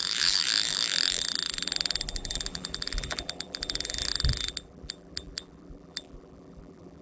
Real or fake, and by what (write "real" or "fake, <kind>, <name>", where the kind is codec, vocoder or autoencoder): fake, vocoder, BigVGAN v2